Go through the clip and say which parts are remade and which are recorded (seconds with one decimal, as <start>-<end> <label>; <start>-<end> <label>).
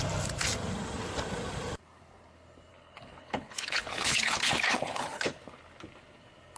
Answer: 0.0-2.7 recorded; 2.7-5.4 remade; 5.4-6.6 recorded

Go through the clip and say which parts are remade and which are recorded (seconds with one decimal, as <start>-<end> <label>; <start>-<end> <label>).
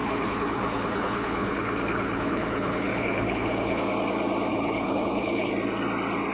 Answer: 0.0-3.8 remade; 3.8-4.5 recorded; 4.5-5.5 remade; 5.5-6.3 recorded